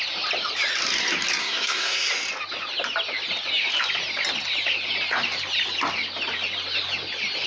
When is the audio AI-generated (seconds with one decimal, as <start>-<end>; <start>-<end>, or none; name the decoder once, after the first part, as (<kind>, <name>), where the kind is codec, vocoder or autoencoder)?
1.4-2.1 (codec, SNAC)